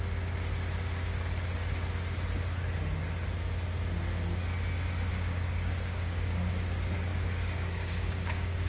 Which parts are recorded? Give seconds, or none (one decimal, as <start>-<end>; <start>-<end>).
0.0-5.1; 6.5-7.1